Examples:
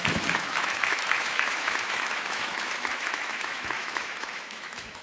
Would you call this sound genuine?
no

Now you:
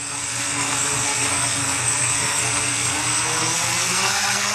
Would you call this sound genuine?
no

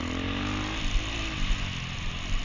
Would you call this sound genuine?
yes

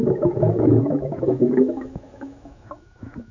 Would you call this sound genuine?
no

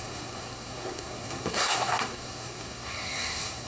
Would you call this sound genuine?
no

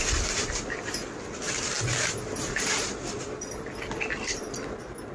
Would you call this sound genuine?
yes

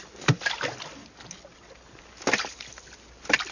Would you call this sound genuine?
yes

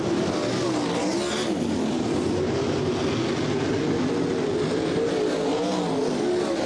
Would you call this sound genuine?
yes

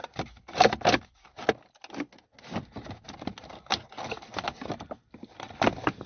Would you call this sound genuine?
yes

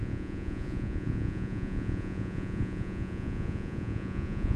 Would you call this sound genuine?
no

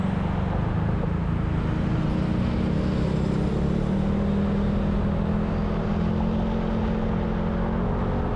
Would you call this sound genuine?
yes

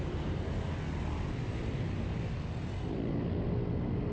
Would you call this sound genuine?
yes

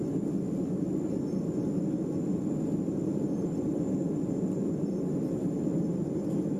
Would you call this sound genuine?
yes